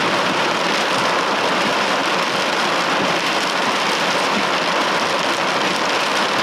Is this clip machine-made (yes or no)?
yes